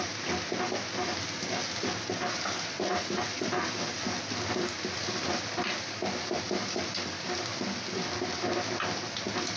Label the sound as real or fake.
real